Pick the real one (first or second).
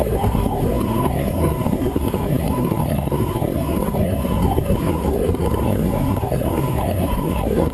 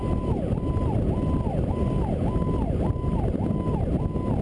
second